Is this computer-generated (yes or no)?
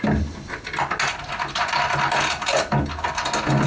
no